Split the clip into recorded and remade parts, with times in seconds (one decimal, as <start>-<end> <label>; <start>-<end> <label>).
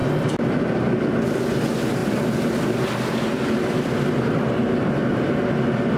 0.0-6.0 recorded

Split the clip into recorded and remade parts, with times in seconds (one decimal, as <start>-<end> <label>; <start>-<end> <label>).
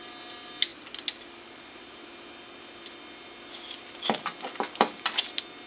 0.0-5.7 recorded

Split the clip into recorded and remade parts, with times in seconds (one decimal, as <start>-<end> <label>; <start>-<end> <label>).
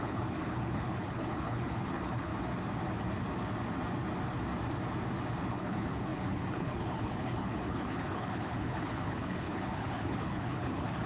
0.0-2.3 remade; 2.3-5.5 recorded; 5.5-11.1 remade